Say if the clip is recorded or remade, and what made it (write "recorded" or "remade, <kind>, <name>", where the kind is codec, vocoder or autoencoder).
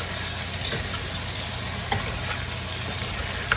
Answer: recorded